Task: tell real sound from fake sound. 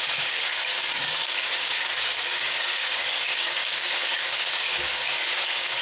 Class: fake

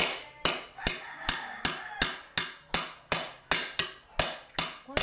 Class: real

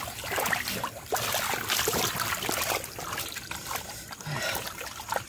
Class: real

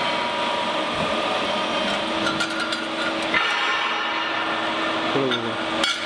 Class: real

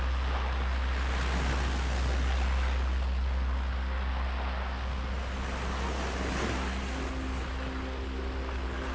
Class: real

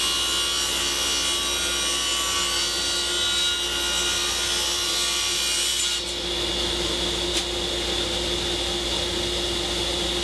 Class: real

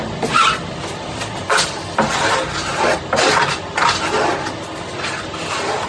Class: real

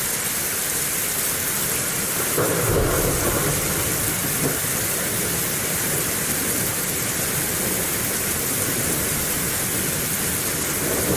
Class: real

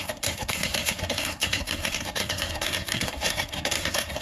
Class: fake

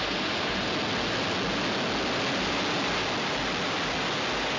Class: real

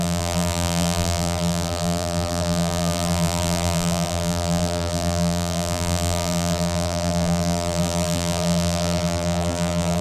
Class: fake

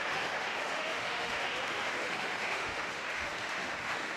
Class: fake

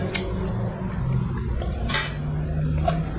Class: real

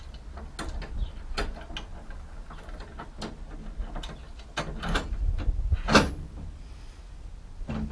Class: real